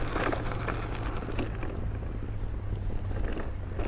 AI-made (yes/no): no